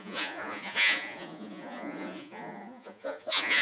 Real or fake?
fake